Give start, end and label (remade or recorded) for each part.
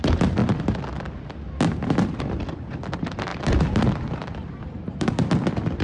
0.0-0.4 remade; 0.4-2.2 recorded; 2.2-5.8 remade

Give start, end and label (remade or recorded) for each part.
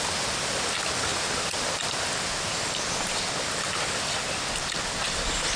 0.0-5.6 recorded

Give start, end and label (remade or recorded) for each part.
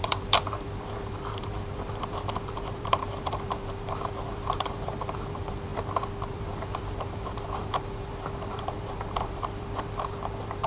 0.0-5.7 remade; 5.7-6.3 recorded; 6.3-10.7 remade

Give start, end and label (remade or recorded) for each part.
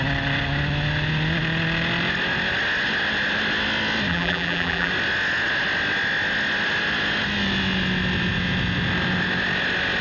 0.0-4.1 recorded; 4.1-4.9 remade; 4.9-10.0 recorded